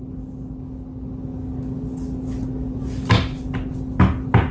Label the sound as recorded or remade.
recorded